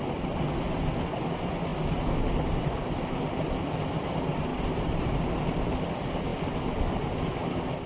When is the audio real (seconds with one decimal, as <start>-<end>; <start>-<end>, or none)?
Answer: 0.0-4.5; 5.1-7.9

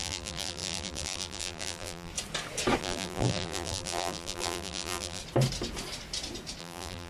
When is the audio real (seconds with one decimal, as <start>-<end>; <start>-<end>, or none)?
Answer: 2.1-2.8; 5.2-6.6

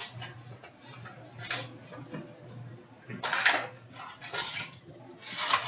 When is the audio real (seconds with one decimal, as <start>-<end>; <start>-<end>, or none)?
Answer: 0.0-4.4; 5.0-5.7

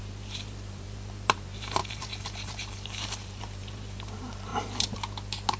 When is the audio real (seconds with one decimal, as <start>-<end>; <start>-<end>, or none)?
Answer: 4.5-5.6